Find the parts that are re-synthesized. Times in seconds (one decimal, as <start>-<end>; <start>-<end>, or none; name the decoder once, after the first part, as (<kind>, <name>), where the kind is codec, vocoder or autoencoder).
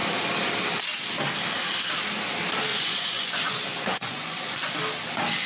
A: 2.7-4.7 (vocoder, Vocos)